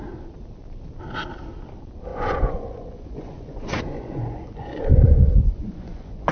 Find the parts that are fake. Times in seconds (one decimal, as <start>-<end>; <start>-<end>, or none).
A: 2.1-6.3